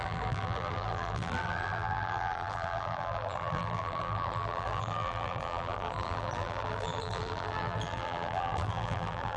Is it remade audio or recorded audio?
remade